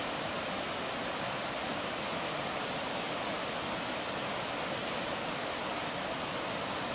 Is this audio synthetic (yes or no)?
no